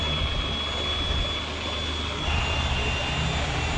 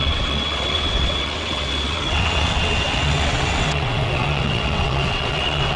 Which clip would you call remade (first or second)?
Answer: second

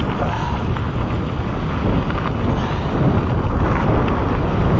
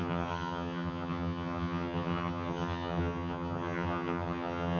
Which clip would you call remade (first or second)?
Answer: second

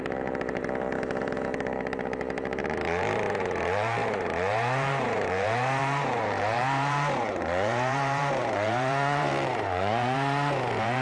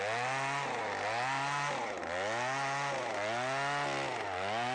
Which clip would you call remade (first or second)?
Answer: first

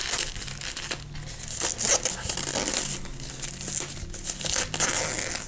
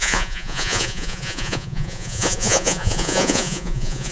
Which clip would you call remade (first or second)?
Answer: second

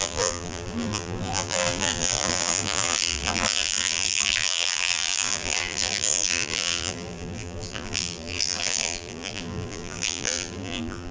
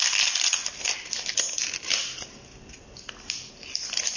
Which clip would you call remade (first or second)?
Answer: first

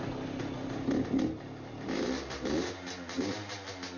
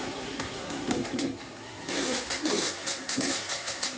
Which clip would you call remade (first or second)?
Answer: second